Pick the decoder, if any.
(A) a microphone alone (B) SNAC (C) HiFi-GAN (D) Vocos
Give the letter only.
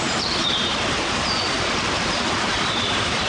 A